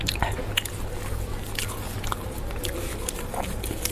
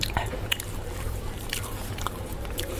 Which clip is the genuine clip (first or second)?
first